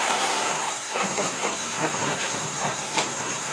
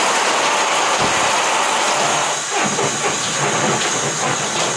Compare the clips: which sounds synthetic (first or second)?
first